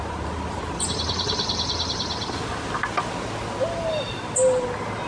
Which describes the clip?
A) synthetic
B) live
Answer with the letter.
B